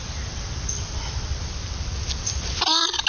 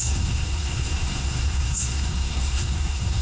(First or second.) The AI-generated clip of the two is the second